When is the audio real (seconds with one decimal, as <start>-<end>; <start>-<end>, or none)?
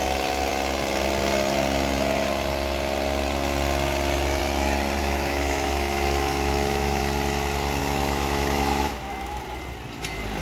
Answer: 0.0-5.0; 7.0-7.8; 9.4-10.4